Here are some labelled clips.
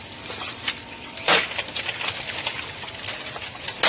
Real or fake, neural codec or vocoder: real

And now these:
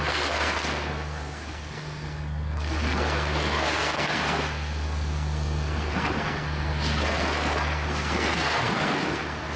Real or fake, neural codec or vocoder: fake, codec, SNAC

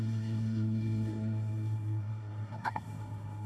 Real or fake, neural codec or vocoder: fake, codec, SNAC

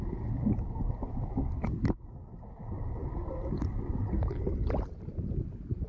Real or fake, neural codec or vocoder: real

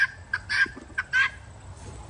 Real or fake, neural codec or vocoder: real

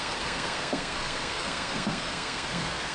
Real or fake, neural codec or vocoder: fake, codec, SNAC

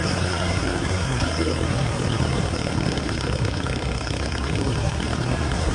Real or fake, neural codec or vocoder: fake, codec, SNAC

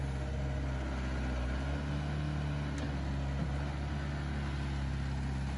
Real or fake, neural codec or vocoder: real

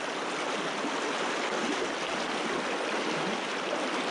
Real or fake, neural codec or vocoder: real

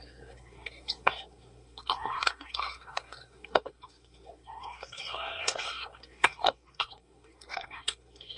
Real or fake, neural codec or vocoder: fake, codec, SNAC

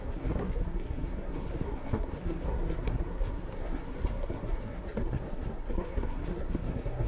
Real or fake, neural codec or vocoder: fake, codec, SNAC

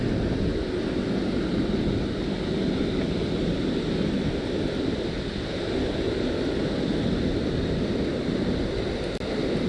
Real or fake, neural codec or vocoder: real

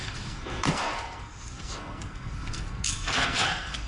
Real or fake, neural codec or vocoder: fake, codec, SNAC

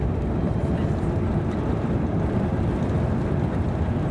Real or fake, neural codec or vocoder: real